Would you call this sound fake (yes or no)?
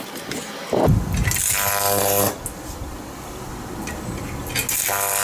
no